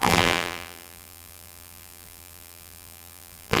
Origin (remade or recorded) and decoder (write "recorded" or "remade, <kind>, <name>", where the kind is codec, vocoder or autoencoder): remade, vocoder, BigVGAN v2